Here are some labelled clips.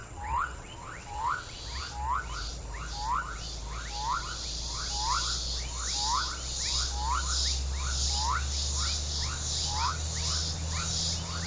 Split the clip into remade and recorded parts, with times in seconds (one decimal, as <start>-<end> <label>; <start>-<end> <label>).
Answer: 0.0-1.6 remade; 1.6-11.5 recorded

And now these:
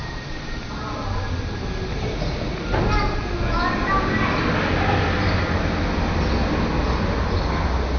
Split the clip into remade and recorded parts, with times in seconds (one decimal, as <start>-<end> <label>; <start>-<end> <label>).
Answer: 0.0-8.0 recorded

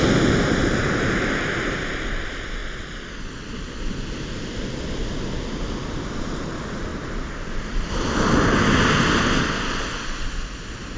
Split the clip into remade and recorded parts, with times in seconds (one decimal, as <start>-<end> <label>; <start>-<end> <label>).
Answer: 0.0-11.0 recorded

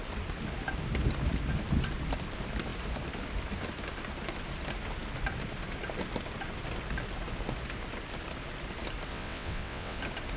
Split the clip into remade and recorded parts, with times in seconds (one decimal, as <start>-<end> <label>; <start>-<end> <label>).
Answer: 0.0-9.1 recorded; 9.1-10.0 remade; 10.0-10.4 recorded

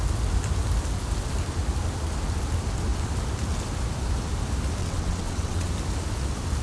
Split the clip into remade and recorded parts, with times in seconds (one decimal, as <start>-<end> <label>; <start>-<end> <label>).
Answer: 0.0-4.8 recorded; 4.8-5.7 remade; 5.7-6.6 recorded